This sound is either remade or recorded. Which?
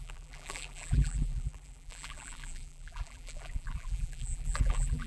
remade